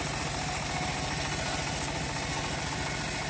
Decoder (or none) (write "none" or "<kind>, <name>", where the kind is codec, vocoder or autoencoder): none